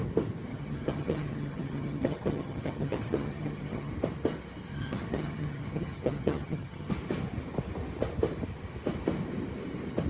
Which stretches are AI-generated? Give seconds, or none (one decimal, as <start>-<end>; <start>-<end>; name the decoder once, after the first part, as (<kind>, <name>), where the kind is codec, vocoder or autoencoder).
0.5-3.9 (vocoder, HiFi-GAN); 4.7-6.9